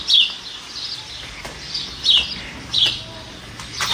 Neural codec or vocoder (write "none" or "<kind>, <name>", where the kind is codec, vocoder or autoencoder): none